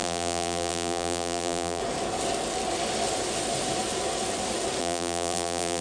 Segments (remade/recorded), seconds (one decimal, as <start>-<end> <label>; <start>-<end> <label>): 0.0-1.8 remade; 1.8-4.8 recorded; 4.8-5.8 remade